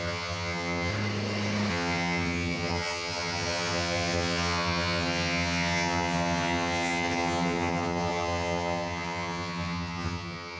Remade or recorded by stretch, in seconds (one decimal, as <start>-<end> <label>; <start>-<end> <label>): 0.0-0.9 remade; 0.9-1.7 recorded; 1.7-10.6 remade